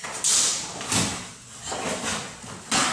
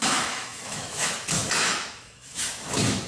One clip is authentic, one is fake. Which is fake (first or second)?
second